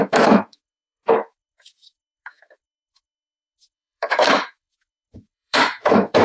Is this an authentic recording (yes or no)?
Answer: no